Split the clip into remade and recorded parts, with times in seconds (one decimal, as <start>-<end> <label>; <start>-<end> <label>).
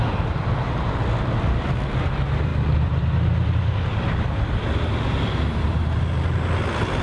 0.0-7.0 remade